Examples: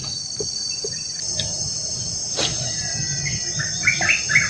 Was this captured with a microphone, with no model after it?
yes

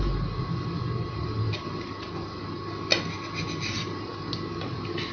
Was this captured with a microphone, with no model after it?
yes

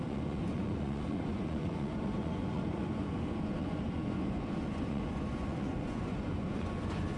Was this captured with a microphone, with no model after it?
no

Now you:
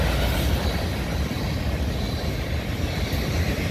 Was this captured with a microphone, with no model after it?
yes